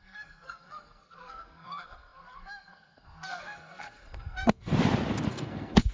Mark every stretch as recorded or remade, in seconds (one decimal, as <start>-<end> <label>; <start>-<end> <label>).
0.0-4.7 remade; 4.7-5.3 recorded; 5.3-5.9 remade